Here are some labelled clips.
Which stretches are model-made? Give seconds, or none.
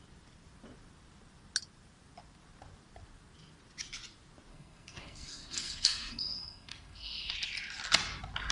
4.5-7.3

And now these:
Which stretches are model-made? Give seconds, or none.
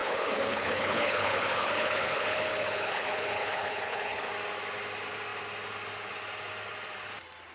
0.0-4.3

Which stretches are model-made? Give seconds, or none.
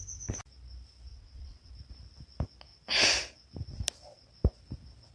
1.1-1.7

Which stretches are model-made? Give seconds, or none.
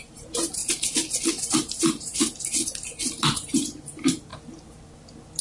0.0-0.6; 1.3-2.1; 3.3-4.3